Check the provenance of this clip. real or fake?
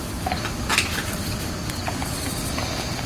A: fake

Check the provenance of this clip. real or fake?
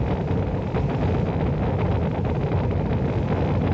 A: real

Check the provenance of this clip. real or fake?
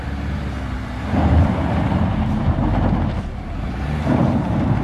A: fake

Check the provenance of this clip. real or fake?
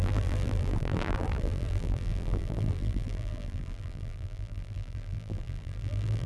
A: fake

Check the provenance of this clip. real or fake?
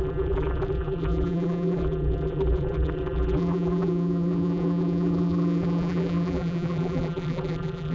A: fake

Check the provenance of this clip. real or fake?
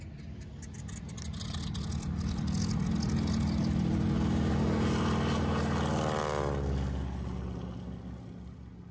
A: real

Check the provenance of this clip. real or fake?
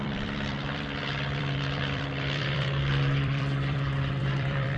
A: fake